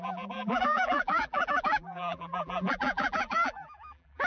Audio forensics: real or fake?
fake